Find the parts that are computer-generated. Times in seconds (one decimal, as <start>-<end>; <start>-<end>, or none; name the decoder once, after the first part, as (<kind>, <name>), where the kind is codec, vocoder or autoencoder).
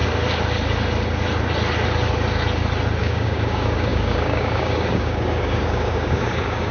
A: 3.0-6.7 (codec, DAC)